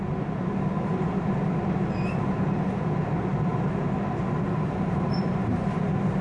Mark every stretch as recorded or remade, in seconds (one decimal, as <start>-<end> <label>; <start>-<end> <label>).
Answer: 0.0-6.2 recorded